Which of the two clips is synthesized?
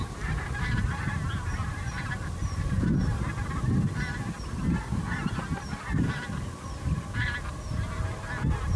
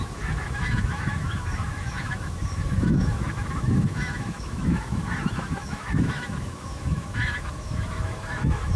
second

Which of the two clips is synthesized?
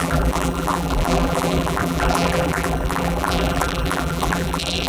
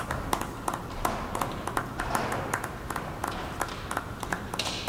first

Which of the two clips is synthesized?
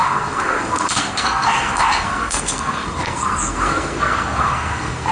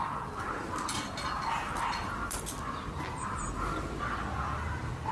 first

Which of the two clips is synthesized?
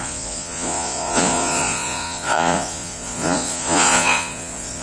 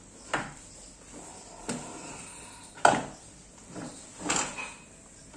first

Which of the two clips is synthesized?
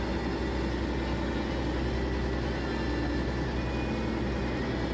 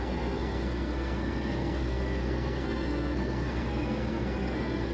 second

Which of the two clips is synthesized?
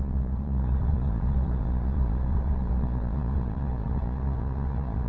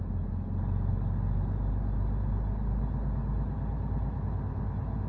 first